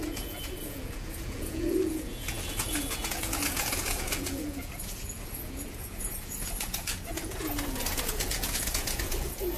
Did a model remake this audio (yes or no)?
yes